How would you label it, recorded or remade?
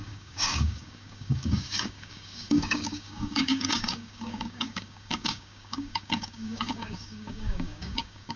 remade